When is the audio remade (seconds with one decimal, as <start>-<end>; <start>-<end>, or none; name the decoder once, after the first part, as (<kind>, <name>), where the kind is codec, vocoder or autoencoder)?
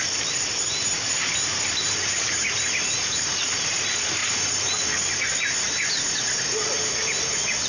none